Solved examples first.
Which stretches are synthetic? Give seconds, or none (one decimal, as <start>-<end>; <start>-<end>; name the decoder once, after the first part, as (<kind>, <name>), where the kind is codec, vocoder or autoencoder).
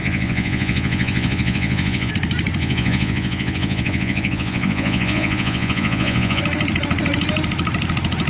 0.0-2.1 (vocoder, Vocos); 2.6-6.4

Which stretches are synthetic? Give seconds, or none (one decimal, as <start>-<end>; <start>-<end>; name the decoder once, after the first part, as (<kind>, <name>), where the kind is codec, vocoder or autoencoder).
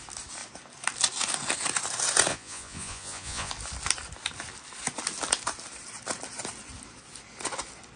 2.3-3.5 (vocoder, Vocos)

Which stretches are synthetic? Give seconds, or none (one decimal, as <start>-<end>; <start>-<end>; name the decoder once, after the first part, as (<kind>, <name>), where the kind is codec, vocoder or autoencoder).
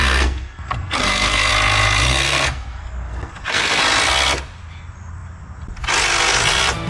0.0-1.5 (codec, SNAC); 2.1-3.8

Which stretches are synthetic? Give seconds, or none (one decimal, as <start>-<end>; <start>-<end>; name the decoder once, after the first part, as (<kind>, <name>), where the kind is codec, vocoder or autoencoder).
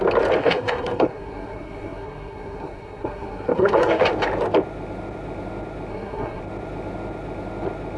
0.4-4.0 (codec, SNAC); 5.9-6.4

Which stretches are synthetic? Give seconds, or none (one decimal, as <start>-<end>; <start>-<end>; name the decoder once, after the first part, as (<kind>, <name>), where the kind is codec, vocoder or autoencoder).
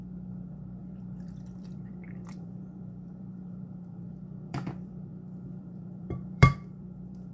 0.0-5.1 (vocoder, BigVGAN v2); 5.6-7.3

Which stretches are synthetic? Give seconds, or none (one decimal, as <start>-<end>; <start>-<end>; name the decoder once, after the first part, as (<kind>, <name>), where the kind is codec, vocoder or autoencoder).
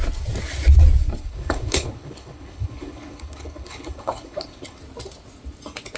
1.2-4.8 (codec, HILCodec)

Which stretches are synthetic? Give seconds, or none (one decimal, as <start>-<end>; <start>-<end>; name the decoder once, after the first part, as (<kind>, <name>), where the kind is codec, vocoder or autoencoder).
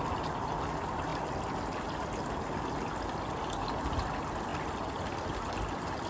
4.5-6.1 (vocoder, BigVGAN v2)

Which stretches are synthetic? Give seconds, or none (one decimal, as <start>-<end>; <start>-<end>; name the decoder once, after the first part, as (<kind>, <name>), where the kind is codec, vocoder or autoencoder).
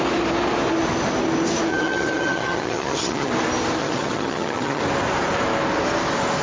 1.7-3.3 (vocoder, HiFi-GAN); 3.8-4.8